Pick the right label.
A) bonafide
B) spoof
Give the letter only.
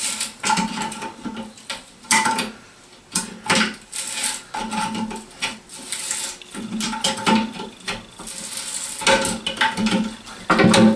A